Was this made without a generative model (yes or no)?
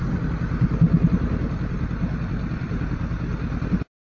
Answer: yes